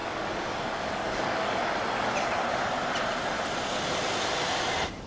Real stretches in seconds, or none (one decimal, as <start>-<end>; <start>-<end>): 1.6-5.1